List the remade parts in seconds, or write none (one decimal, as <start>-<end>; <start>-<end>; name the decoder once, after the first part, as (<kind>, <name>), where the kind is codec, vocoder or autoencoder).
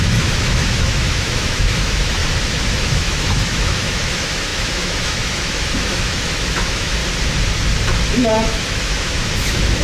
0.0-2.2 (autoencoder, DAC-VAE); 2.7-7.0; 8.1-9.8